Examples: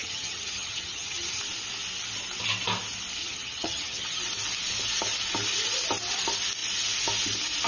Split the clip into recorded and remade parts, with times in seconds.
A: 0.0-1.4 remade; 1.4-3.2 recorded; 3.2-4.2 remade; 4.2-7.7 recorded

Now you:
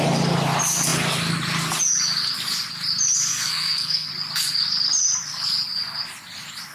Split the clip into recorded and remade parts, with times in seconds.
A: 0.0-3.3 recorded; 3.3-4.1 remade; 4.1-6.7 recorded

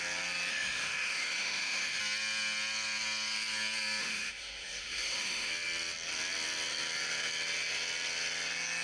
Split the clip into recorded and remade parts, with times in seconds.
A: 0.0-0.5 recorded; 0.5-2.0 remade; 2.0-4.0 recorded; 4.0-5.5 remade; 5.5-8.8 recorded

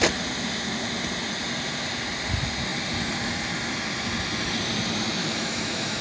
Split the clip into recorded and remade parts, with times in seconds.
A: 0.0-5.2 recorded; 5.2-6.0 remade

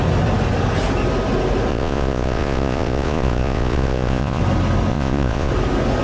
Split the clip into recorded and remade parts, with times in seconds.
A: 0.0-1.7 recorded; 1.7-4.4 remade; 4.4-4.9 recorded; 4.9-5.5 remade; 5.5-6.0 recorded

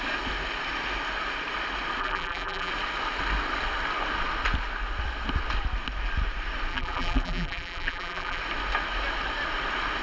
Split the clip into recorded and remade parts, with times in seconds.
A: 0.0-2.0 recorded; 2.0-2.7 remade; 2.7-6.7 recorded; 6.7-8.4 remade; 8.4-10.0 recorded

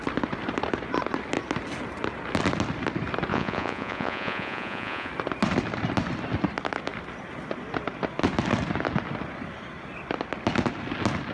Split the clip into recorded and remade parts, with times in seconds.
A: 0.0-3.3 recorded; 3.3-5.1 remade; 5.1-11.3 recorded